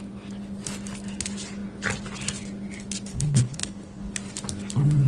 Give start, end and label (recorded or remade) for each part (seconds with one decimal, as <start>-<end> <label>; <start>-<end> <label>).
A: 0.0-3.1 recorded; 3.1-4.1 remade; 4.1-5.1 recorded